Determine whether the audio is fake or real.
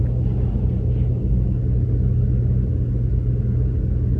real